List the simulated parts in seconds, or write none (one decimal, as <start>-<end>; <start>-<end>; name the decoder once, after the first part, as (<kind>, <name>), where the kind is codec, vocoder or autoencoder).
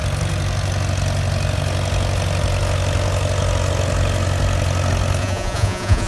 5.2-6.1 (vocoder, Vocos)